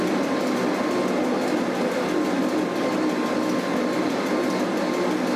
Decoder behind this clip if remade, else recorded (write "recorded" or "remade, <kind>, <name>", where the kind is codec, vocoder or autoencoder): recorded